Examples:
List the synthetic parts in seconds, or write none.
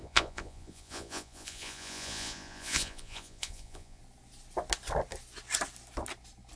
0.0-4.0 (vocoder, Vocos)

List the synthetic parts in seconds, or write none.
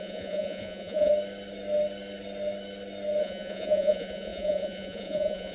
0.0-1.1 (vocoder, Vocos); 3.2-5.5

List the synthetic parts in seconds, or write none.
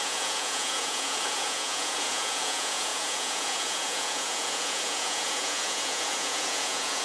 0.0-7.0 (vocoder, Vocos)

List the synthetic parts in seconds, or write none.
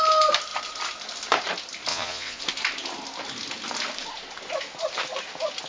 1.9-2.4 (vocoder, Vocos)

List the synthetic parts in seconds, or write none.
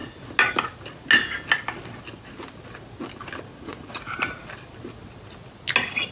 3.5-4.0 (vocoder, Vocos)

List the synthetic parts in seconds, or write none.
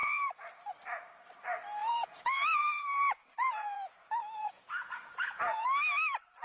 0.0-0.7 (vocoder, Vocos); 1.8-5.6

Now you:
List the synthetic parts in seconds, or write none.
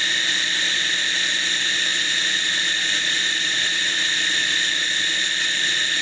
1.9-3.9 (vocoder, Vocos); 4.4-5.3